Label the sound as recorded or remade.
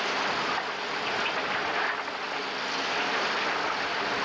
recorded